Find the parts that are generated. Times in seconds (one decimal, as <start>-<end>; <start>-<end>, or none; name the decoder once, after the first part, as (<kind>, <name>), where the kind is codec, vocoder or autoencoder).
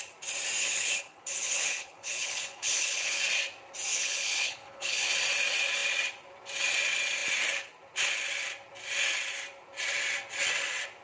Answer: 0.6-3.2 (codec, HILCodec); 3.9-5.1